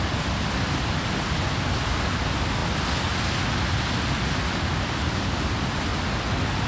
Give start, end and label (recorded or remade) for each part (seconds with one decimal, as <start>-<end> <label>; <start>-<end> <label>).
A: 0.0-6.7 recorded